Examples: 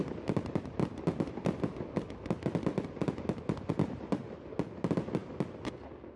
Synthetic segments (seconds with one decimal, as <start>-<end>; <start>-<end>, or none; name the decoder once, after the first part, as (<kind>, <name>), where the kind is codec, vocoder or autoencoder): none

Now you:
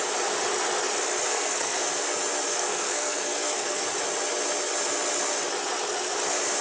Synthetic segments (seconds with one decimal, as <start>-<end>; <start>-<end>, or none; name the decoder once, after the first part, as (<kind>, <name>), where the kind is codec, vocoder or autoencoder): 1.3-1.8 (codec, SNAC); 2.5-3.8

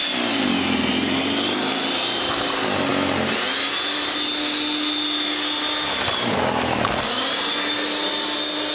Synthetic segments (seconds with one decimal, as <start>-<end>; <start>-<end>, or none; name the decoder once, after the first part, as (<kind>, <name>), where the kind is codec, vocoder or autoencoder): none

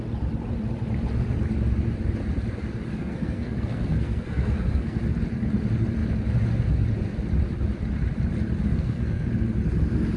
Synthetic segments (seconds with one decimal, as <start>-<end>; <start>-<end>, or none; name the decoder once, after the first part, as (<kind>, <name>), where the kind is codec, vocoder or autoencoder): 3.0-5.0 (codec, SNAC); 8.7-9.3